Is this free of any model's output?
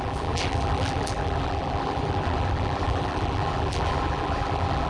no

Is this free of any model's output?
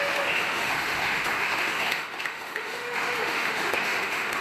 no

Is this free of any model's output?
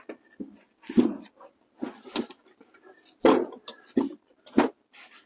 yes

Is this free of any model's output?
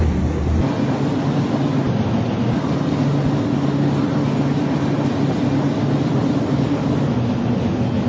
yes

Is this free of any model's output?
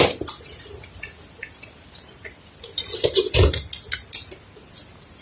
yes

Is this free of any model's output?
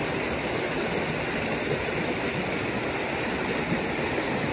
yes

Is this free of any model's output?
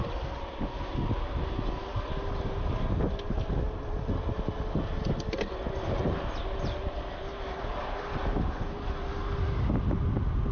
yes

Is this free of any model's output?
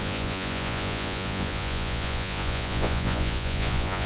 no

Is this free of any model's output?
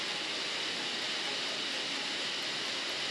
yes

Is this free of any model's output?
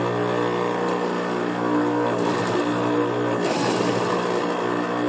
yes